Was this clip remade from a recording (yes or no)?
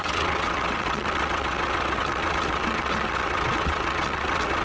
yes